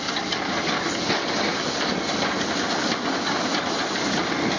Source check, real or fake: real